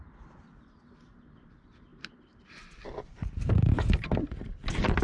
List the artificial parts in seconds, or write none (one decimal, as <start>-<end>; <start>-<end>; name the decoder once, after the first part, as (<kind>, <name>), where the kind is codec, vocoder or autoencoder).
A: none